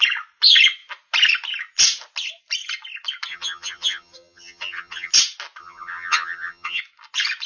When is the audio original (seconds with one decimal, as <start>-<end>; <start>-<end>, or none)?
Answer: 0.0-3.3; 5.1-5.6; 6.8-7.5